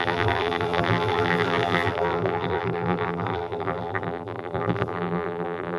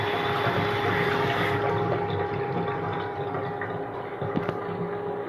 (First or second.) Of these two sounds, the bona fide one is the second